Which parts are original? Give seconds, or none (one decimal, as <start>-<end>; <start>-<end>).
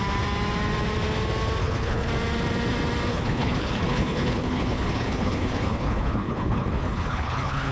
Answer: 0.0-1.6; 2.1-3.1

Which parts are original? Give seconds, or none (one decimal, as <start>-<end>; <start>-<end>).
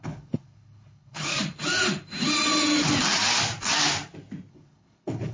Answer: 1.3-4.5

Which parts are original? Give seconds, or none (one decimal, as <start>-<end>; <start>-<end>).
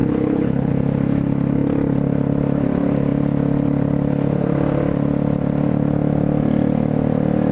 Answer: 0.7-7.5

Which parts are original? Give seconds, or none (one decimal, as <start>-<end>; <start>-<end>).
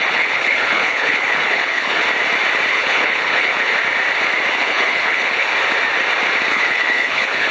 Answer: 2.0-2.7; 3.7-4.5; 5.5-6.5